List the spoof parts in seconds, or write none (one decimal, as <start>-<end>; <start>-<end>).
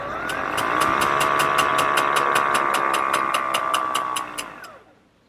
none